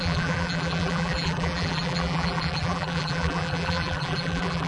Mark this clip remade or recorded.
remade